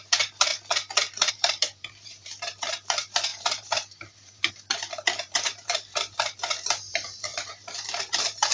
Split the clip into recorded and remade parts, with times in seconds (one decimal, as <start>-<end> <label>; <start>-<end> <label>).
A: 0.0-0.5 remade; 0.5-1.3 recorded; 1.3-8.5 remade